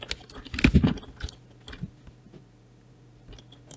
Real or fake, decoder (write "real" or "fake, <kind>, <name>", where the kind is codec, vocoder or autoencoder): real